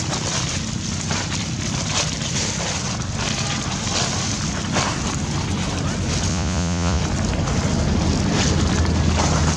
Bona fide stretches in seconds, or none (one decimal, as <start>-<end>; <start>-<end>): 0.0-6.3; 7.0-9.6